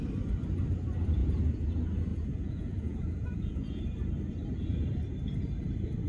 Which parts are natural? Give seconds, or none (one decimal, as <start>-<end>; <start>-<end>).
0.0-1.2; 1.7-2.1; 3.8-6.1